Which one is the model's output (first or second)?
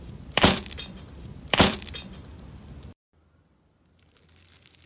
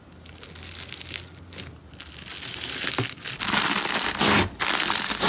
first